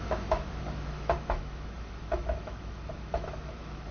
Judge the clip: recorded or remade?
remade